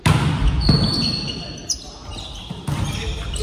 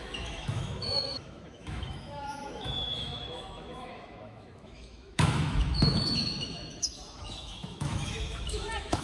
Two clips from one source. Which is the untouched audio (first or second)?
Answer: first